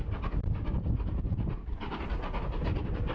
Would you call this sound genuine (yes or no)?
yes